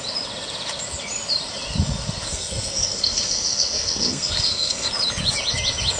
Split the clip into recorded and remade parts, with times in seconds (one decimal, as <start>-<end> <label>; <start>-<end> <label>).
0.0-2.3 recorded; 2.3-4.9 remade; 4.9-6.0 recorded